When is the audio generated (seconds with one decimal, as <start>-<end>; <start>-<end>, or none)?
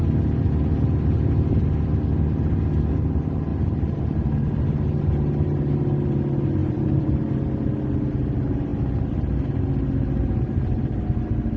3.5-5.0; 6.6-7.2